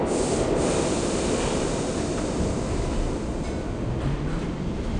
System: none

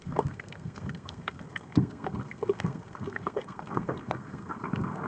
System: codec, SNAC